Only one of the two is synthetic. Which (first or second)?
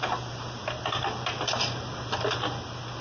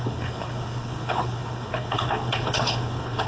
second